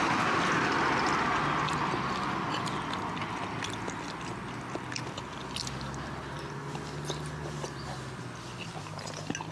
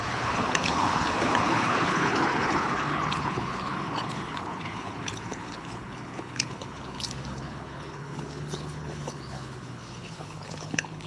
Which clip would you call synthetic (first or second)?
second